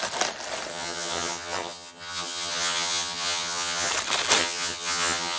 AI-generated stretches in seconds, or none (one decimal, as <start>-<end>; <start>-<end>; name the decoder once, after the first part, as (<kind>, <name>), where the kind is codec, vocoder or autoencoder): 0.7-3.9 (vocoder, HiFi-GAN); 4.4-5.4